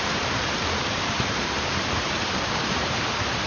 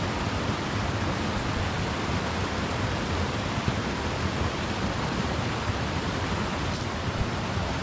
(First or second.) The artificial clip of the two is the first